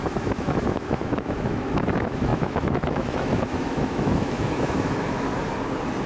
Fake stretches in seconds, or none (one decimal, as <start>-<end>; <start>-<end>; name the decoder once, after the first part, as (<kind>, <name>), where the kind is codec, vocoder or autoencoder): 0.0-5.3 (autoencoder, DAC-VAE)